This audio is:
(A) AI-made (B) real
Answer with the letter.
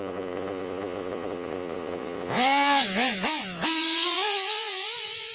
A